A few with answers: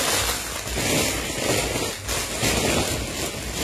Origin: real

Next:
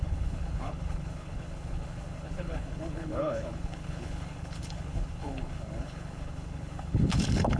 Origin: fake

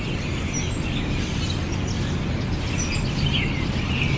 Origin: real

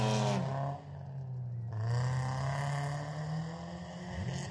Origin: real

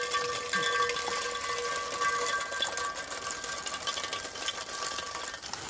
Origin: real